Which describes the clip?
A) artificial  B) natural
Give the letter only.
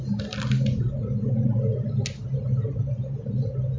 B